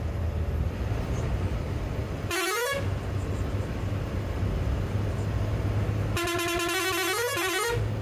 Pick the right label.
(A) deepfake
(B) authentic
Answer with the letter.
B